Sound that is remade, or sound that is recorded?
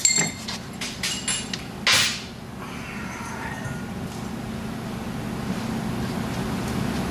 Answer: recorded